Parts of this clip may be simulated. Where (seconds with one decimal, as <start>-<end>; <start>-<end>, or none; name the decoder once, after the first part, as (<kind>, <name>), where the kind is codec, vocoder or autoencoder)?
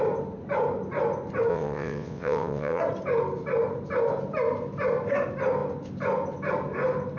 1.5-2.8 (vocoder, WaveNeXt)